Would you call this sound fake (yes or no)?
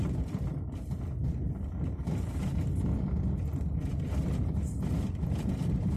yes